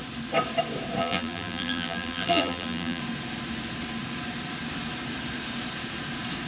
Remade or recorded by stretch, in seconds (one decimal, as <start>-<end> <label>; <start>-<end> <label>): 0.0-1.0 recorded; 1.0-3.0 remade; 3.0-6.5 recorded